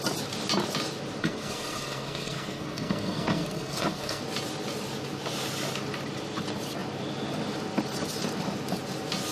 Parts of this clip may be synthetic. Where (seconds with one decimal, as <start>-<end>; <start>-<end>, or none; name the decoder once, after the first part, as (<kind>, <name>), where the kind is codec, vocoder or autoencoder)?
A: 1.2-4.2 (codec, SNAC)